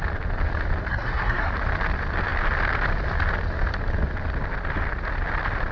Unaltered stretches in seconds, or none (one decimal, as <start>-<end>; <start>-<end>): 0.0-0.9; 1.5-5.7